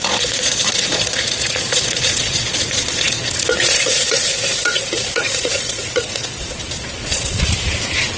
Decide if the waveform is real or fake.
fake